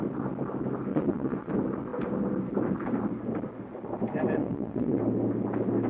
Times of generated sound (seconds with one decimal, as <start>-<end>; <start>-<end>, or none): 0.9-1.5; 4.4-5.0